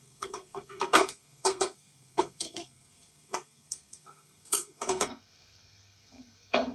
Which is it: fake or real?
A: fake